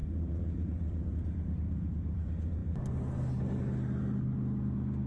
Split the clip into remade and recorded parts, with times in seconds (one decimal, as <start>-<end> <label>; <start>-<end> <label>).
0.0-5.1 recorded